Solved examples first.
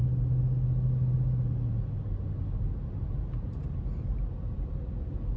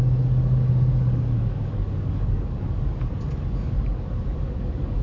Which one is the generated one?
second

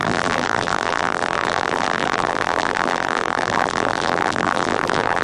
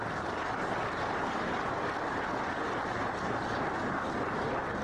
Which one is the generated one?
first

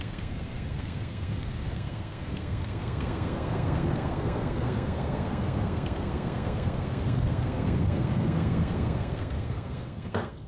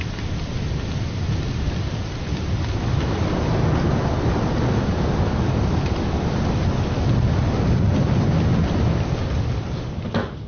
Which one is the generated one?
first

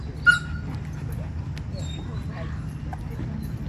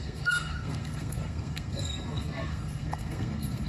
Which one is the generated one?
second